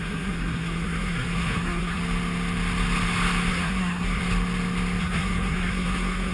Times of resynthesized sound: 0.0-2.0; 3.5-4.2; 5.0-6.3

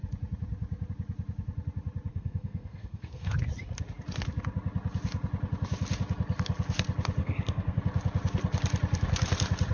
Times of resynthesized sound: 2.1-3.3; 7.2-7.8

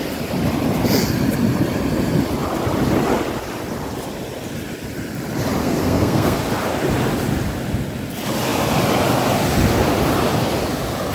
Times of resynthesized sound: 5.6-6.4

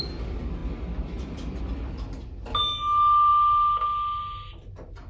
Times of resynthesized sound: none

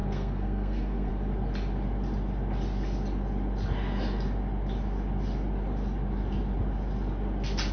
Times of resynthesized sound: 0.0-1.1

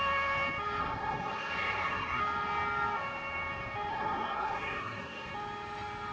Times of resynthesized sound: 0.8-2.2; 3.9-5.3

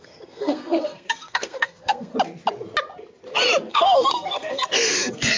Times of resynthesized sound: 0.0-2.1; 3.7-5.4

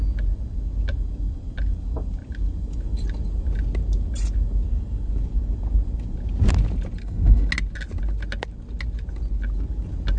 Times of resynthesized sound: 7.0-7.5